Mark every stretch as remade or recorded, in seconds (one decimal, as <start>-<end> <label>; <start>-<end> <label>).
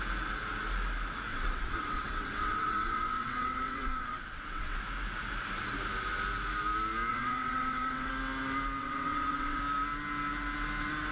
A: 0.0-1.3 recorded; 1.3-4.8 remade; 4.8-7.1 recorded; 7.1-8.1 remade; 8.1-8.8 recorded; 8.8-9.6 remade; 9.6-11.1 recorded